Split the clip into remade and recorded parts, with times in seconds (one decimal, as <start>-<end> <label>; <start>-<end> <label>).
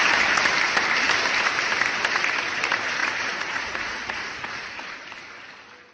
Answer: 0.0-3.0 recorded; 3.0-4.8 remade; 4.8-5.9 recorded